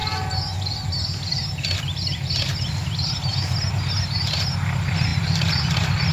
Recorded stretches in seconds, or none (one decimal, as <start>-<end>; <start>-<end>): 0.0-6.1